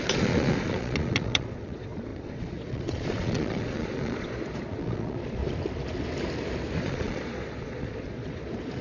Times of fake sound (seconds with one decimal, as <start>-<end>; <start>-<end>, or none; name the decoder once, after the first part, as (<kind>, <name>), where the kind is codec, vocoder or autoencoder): 0.0-5.4 (vocoder, Vocos); 6.8-8.8